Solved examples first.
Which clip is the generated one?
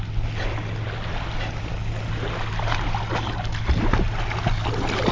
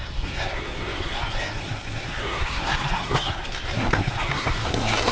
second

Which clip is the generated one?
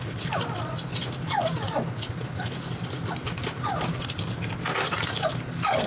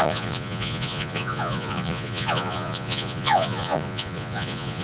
second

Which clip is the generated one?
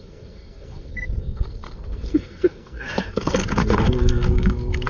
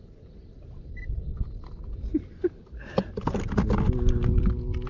first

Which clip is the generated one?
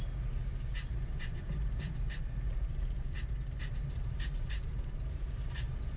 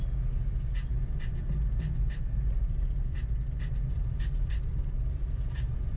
first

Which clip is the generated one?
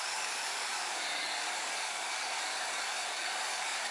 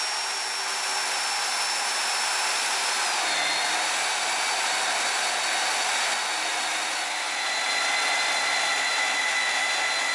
first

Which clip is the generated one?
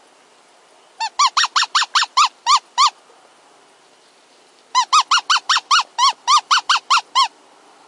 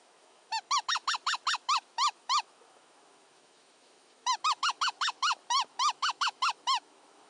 second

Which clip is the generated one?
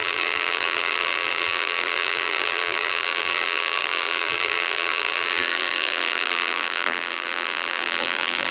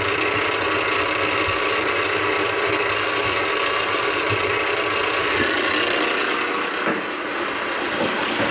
first